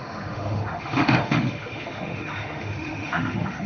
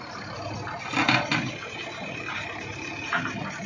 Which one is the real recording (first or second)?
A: second